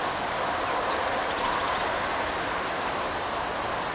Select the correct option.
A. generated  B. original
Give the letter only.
B